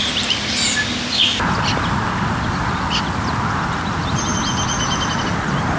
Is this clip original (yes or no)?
yes